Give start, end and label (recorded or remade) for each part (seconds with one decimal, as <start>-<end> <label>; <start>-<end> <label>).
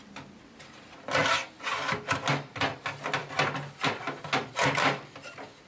0.0-5.7 recorded